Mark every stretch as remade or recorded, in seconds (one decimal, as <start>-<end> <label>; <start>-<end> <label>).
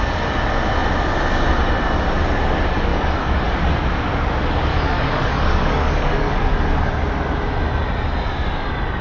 0.0-2.9 recorded; 2.9-3.7 remade; 3.7-4.7 recorded; 4.7-6.9 remade; 6.9-9.0 recorded